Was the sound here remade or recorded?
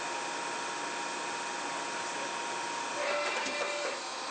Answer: recorded